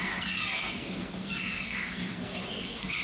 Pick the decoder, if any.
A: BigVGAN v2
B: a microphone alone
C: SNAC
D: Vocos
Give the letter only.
C